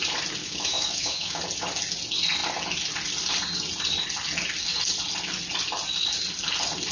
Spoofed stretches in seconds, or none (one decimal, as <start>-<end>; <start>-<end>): 0.4-1.4